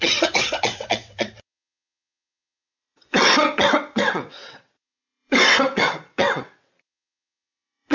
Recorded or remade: remade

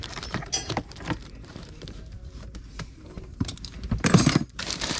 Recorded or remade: remade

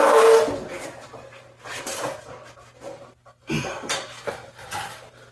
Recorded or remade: recorded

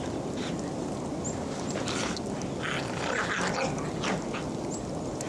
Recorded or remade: recorded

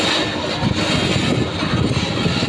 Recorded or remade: recorded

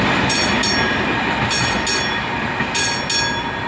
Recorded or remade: recorded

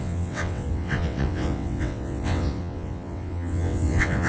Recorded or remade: remade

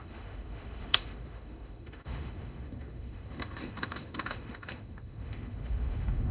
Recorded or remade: remade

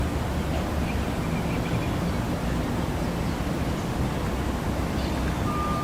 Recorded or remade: recorded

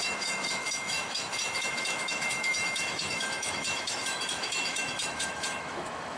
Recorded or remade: remade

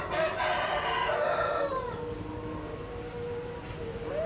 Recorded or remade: recorded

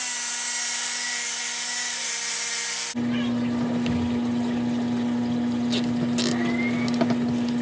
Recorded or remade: recorded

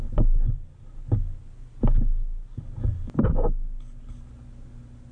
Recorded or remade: recorded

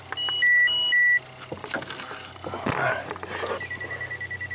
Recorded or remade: recorded